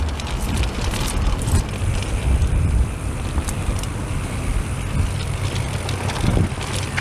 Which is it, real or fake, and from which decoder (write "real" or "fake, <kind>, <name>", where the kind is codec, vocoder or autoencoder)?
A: fake, vocoder, BigVGAN v2